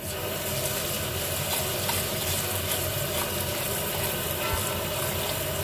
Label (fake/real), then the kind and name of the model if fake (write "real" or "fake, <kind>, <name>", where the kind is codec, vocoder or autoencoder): real